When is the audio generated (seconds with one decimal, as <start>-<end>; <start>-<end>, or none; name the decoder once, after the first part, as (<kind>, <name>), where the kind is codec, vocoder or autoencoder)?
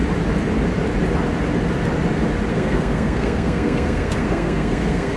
2.5-5.2 (codec, SNAC)